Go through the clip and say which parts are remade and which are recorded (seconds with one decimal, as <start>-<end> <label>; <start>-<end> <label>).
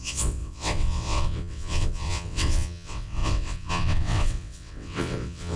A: 0.0-5.6 remade